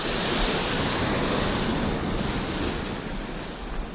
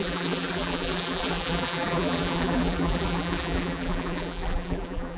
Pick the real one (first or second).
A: first